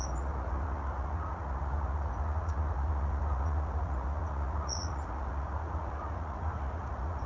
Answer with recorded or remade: remade